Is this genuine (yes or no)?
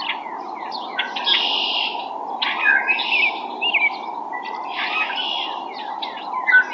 yes